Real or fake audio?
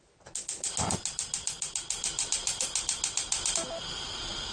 real